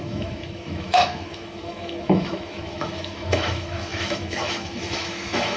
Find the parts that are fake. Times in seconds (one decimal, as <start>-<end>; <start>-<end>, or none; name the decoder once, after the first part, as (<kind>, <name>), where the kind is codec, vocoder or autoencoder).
0.0-5.6 (autoencoder, DAC-VAE)